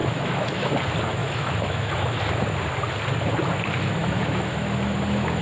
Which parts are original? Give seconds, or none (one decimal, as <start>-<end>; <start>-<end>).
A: 0.7-1.2; 2.2-4.0